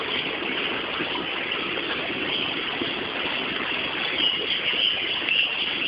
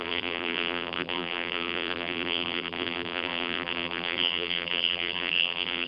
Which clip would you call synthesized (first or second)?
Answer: second